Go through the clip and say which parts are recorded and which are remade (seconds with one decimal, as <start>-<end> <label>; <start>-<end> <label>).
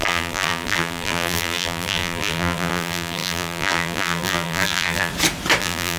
0.0-5.1 remade; 5.1-5.6 recorded; 5.6-6.0 remade